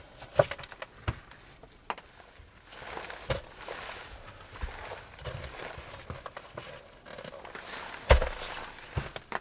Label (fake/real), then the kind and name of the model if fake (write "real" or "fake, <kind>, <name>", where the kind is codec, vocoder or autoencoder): real